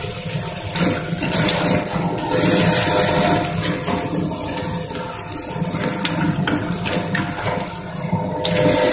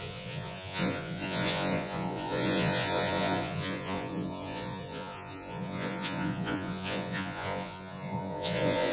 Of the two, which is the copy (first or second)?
second